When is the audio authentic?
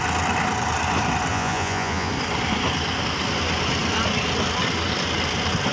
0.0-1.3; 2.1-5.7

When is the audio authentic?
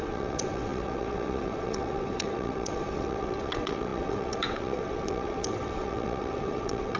none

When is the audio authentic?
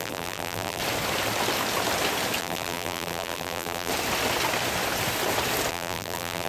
0.8-2.4; 3.9-5.7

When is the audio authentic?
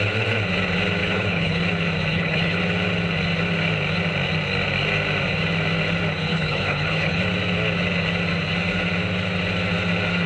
0.0-1.0; 1.6-2.1; 2.6-6.2; 7.2-10.3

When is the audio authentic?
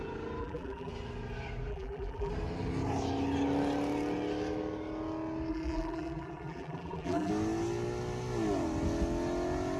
0.0-0.4; 0.9-1.7; 2.3-5.5; 7.3-9.8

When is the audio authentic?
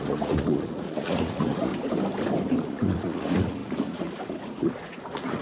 1.7-2.5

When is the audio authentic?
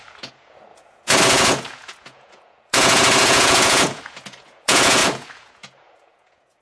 none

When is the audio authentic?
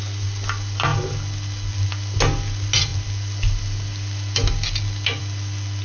0.0-5.8